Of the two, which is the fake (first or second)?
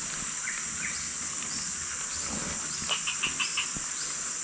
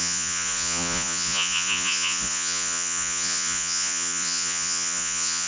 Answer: second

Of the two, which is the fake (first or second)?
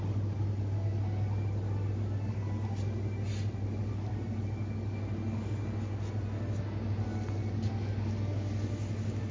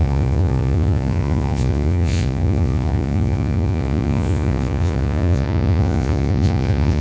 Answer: second